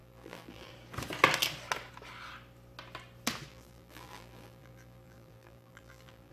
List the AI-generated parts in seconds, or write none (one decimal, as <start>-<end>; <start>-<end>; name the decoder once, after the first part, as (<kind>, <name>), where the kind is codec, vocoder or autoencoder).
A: 0.0-0.7 (vocoder, BigVGAN v2); 3.5-6.3